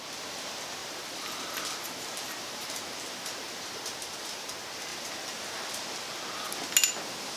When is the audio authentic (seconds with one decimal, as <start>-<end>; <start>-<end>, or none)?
0.0-0.8; 4.5-4.9; 5.7-7.4